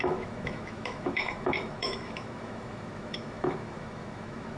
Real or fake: fake